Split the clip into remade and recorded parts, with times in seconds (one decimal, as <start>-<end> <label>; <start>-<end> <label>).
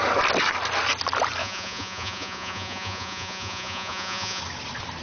0.0-1.4 recorded; 1.4-4.4 remade; 4.4-5.0 recorded